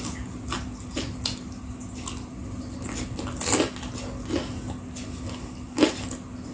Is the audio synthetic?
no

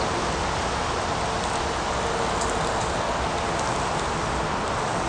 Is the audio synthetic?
no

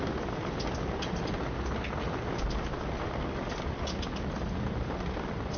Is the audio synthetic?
no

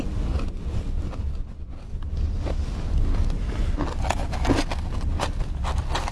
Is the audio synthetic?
no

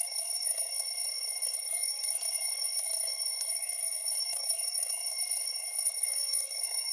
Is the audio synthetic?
yes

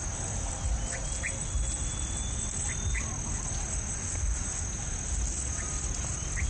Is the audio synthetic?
no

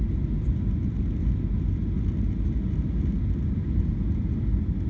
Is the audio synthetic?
no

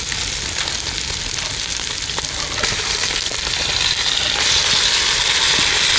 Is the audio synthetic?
no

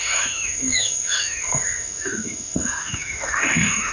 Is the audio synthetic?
yes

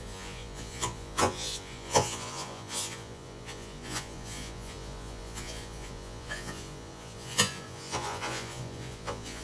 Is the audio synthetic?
yes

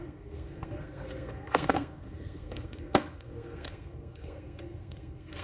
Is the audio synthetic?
yes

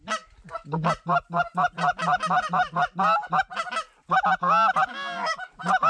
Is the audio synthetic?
no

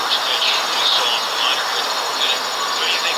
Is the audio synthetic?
no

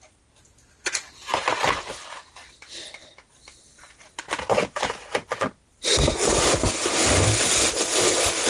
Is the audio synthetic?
no